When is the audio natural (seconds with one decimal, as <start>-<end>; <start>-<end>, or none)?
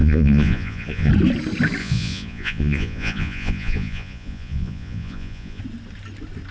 1.1-1.8; 5.6-6.5